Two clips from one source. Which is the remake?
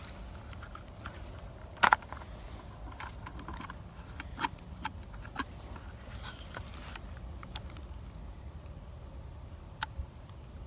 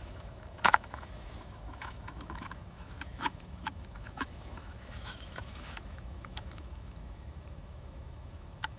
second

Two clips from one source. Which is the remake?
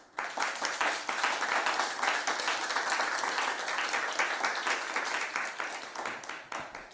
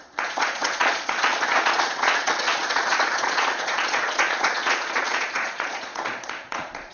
second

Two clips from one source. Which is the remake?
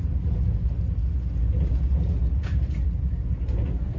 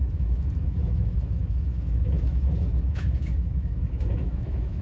second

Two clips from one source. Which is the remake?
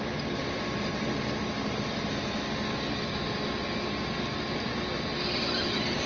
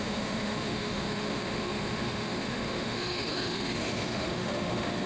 second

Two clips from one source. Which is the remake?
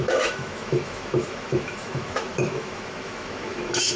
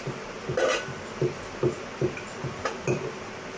first